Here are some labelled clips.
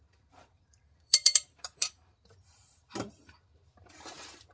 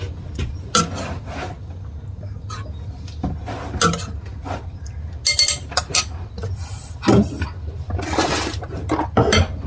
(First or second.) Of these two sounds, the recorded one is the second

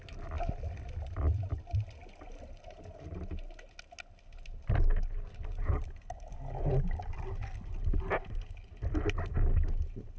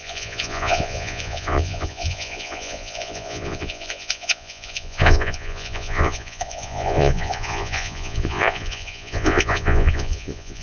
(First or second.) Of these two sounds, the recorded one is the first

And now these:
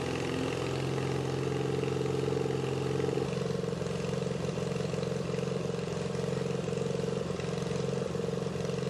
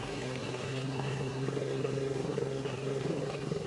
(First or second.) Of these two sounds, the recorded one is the first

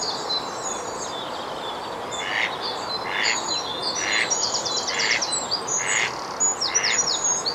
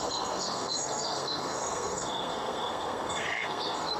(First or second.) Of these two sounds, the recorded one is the first